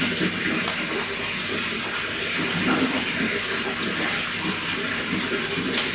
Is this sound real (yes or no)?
yes